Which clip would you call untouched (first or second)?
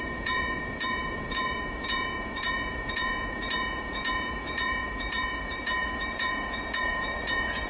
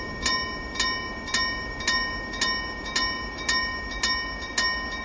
second